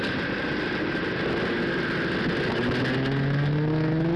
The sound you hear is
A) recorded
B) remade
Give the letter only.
A